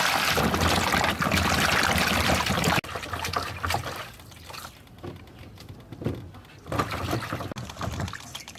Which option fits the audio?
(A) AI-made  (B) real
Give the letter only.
B